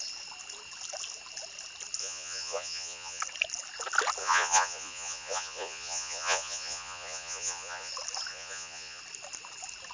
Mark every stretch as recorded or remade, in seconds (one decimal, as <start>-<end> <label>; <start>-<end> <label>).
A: 0.0-2.0 recorded; 2.0-3.2 remade; 3.2-4.2 recorded; 4.2-7.9 remade; 7.9-8.3 recorded; 8.3-9.0 remade; 9.0-9.9 recorded